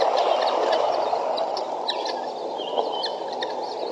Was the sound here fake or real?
real